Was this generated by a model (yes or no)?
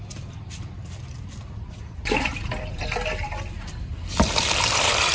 yes